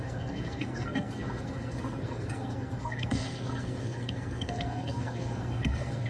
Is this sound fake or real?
fake